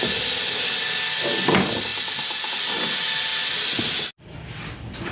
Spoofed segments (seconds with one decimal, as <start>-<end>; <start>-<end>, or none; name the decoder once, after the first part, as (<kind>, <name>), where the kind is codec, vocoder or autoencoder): none